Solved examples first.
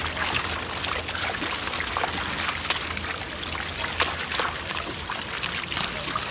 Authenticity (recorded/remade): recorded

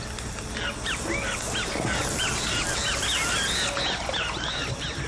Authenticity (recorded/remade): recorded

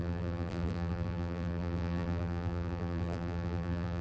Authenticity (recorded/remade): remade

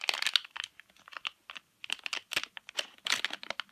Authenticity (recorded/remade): recorded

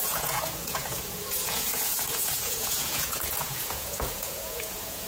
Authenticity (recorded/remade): remade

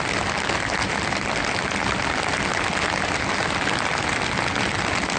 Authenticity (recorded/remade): recorded